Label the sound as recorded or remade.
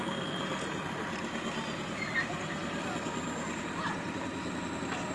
recorded